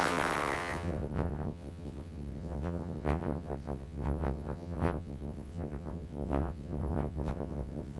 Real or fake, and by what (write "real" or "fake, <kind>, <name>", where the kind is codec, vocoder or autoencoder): fake, vocoder, WaveNeXt